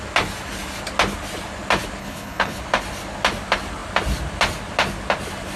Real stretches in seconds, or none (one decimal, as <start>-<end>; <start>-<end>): 0.0-2.0; 2.6-5.6